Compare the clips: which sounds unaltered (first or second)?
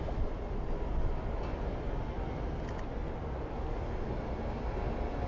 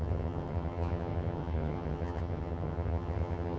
first